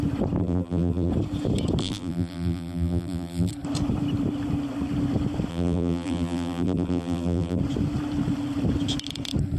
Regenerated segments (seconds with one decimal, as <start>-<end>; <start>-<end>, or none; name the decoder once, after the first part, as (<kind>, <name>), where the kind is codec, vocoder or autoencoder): 0.4-1.1 (vocoder, BigVGAN v2); 1.8-3.5; 5.5-7.6